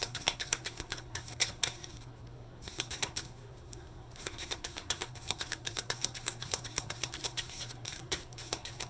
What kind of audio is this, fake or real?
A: fake